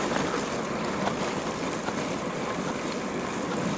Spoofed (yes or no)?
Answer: yes